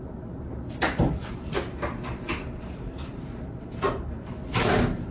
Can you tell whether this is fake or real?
fake